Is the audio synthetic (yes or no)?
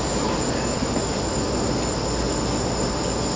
no